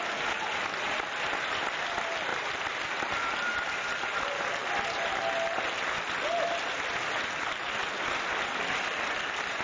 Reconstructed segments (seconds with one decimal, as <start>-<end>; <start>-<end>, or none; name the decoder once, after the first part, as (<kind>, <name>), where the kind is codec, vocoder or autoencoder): 2.3-3.3 (vocoder, BigVGAN v2)